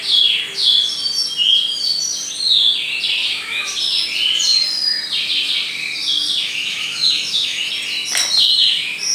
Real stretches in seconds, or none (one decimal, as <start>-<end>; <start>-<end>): 0.0-3.2; 3.7-6.4; 7.7-9.1